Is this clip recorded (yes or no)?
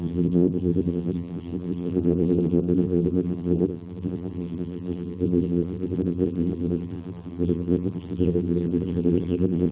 no